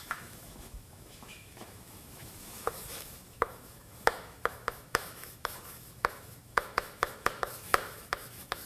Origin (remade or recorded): remade